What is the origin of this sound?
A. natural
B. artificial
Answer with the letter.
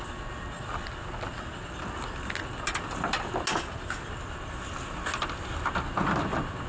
A